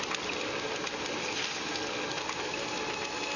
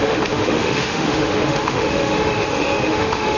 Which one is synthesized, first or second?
second